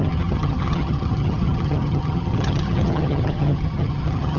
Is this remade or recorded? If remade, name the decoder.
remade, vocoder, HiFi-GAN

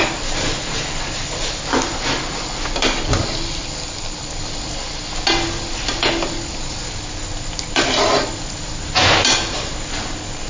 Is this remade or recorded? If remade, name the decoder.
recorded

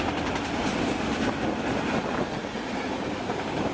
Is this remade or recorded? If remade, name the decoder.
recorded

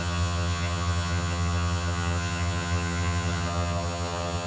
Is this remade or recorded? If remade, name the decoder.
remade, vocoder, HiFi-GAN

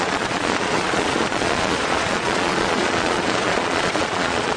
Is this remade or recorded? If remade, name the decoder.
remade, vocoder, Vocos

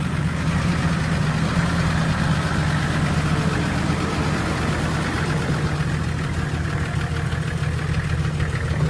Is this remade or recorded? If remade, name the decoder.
recorded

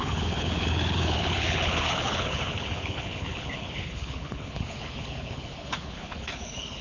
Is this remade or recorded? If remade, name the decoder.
remade, codec, HILCodec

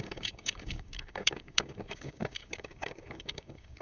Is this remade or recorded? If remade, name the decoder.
remade, codec, DAC